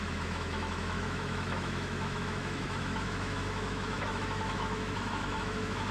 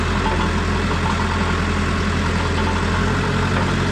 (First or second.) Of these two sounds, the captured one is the second